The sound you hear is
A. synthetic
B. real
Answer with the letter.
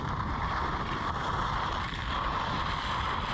B